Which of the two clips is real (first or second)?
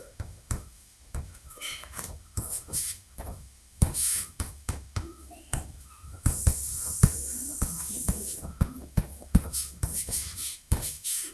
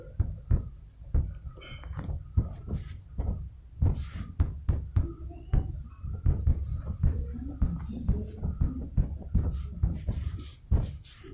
second